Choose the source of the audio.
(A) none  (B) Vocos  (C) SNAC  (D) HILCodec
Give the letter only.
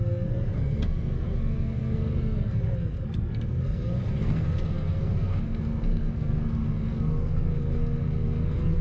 C